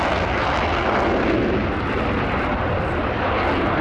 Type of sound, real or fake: real